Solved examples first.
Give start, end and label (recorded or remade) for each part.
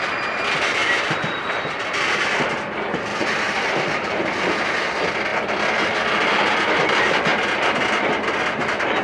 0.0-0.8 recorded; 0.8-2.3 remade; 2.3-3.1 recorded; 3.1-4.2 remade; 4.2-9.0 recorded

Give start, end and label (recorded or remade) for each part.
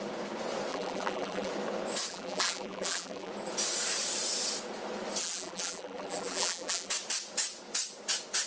0.0-0.7 recorded; 0.7-1.5 remade; 1.5-2.1 recorded; 2.1-3.3 remade; 3.3-5.2 recorded; 5.2-6.9 remade; 6.9-8.5 recorded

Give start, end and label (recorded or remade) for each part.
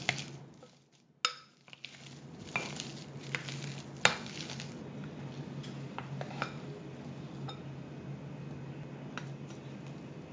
0.0-2.9 recorded; 2.9-3.7 remade; 3.7-10.3 recorded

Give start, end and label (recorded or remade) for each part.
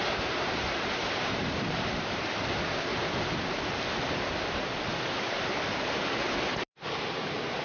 0.0-2.2 remade; 2.2-4.9 recorded; 4.9-5.8 remade; 5.8-7.6 recorded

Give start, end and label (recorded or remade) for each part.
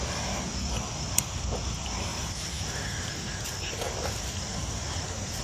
0.0-2.1 recorded; 2.1-5.4 remade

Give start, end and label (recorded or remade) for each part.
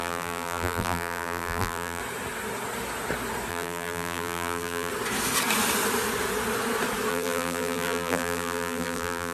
0.0-2.0 remade; 2.0-3.5 recorded; 3.5-4.9 remade; 4.9-7.1 recorded; 7.1-9.3 remade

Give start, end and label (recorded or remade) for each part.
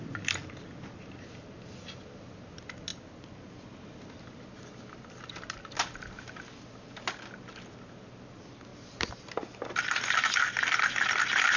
0.0-8.7 recorded; 8.7-9.3 remade; 9.3-11.6 recorded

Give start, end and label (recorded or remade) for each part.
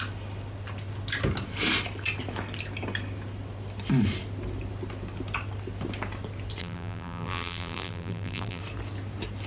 0.0-6.6 recorded; 6.6-8.6 remade; 8.6-9.5 recorded